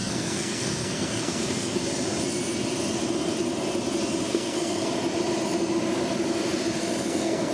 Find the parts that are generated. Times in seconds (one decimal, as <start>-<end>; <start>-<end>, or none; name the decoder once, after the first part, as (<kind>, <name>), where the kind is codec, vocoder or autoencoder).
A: 0.0-1.8 (codec, SNAC); 4.3-4.9; 6.8-7.5